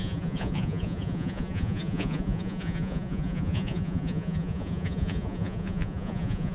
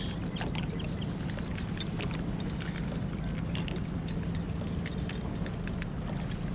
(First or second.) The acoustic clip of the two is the second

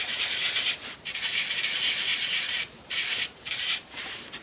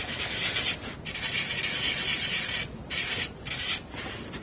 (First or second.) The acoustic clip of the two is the second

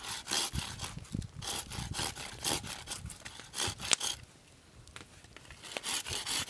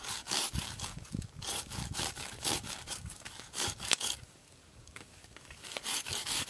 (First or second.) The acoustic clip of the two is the first